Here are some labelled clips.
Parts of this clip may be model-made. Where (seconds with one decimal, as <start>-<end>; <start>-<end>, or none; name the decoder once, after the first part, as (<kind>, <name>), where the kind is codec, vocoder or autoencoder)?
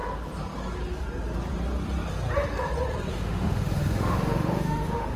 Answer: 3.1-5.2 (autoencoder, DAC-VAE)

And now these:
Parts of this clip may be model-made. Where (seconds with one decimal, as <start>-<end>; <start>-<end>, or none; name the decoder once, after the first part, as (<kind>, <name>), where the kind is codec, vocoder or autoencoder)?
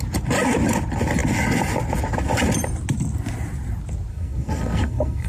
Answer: 4.1-5.3 (codec, SNAC)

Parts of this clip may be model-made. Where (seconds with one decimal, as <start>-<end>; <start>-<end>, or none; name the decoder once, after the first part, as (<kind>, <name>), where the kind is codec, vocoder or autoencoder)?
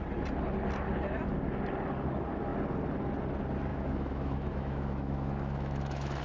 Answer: 3.7-6.2 (autoencoder, DAC-VAE)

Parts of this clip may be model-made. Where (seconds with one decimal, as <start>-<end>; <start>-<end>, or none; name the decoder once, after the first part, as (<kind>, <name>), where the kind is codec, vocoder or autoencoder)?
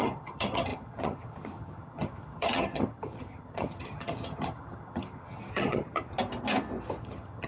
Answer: 0.0-6.1 (vocoder, HiFi-GAN); 7.0-7.5